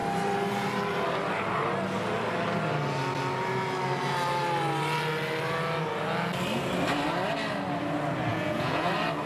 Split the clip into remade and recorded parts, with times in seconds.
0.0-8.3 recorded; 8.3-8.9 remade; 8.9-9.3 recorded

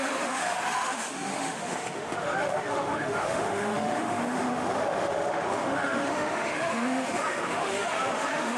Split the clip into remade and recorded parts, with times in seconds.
0.0-8.6 remade

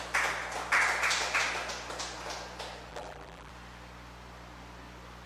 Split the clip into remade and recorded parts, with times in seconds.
0.0-2.9 recorded; 2.9-3.5 remade; 3.5-5.3 recorded

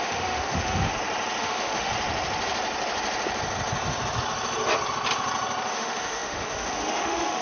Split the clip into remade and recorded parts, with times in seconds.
0.0-0.9 remade; 0.9-1.4 recorded; 1.4-1.9 remade; 1.9-5.7 recorded; 5.7-7.4 remade

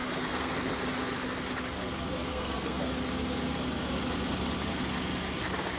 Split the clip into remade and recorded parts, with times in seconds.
0.0-0.5 remade; 0.5-2.3 recorded; 2.3-2.9 remade; 2.9-5.8 recorded

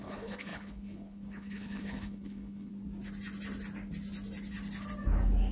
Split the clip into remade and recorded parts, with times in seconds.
0.0-2.7 remade; 2.7-5.5 recorded

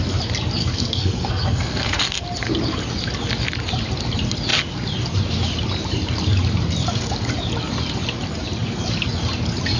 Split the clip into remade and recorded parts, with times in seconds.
0.0-0.6 recorded; 0.6-2.2 remade; 2.2-9.8 recorded

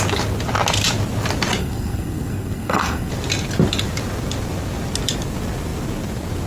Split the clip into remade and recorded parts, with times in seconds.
0.0-1.6 recorded; 1.6-3.1 remade; 3.1-6.5 recorded